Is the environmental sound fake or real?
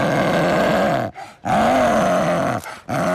real